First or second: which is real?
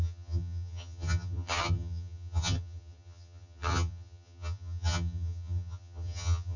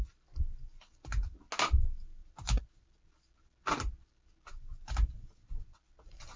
second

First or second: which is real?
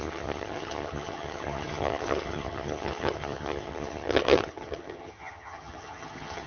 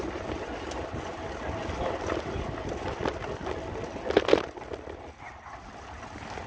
second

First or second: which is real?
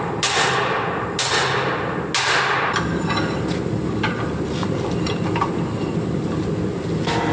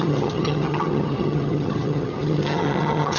first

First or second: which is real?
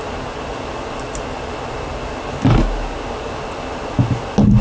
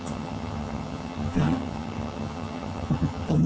first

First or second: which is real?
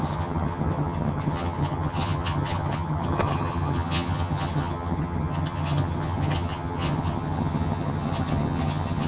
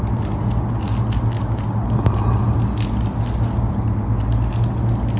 second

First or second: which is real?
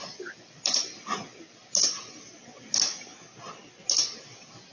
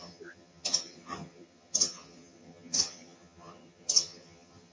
first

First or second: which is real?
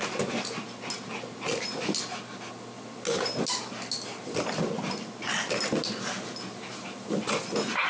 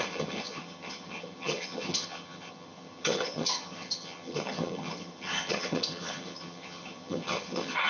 first